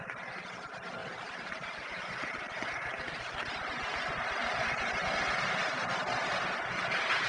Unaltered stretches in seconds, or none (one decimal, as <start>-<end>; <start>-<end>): 0.0-1.0; 2.0-7.3